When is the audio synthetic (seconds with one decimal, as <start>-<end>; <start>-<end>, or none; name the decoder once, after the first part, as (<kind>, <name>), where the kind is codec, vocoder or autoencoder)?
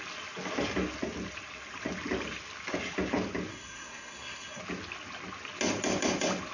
3.5-4.6 (codec, SNAC)